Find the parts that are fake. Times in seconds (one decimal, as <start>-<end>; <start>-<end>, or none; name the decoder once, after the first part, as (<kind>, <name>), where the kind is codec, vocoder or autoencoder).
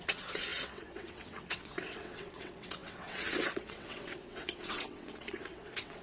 0.0-6.0 (vocoder, WaveNeXt)